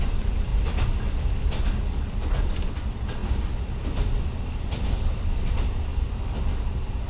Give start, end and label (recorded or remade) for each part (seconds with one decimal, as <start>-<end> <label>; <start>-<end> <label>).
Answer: 0.0-7.1 recorded